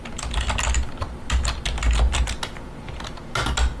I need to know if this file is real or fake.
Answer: real